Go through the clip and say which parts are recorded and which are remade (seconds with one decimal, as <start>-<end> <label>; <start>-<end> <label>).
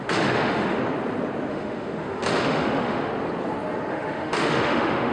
0.0-0.8 remade; 0.8-1.5 recorded; 1.5-3.1 remade; 3.1-3.9 recorded; 3.9-5.1 remade